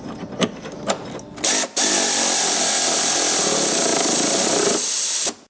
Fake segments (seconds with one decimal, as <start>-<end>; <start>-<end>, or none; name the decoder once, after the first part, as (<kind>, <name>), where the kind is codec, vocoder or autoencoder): none